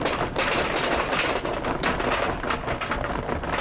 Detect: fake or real real